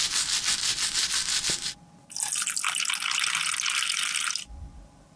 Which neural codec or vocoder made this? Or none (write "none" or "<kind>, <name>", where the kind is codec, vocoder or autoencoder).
none